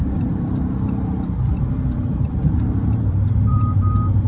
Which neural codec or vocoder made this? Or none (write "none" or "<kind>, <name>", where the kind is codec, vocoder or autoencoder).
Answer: vocoder, BigVGAN v2